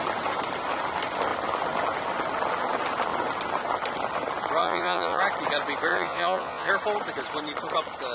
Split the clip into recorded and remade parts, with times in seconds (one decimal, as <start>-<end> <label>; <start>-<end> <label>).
0.0-4.6 recorded; 4.6-5.2 remade; 5.2-5.9 recorded; 5.9-6.7 remade; 6.7-8.1 recorded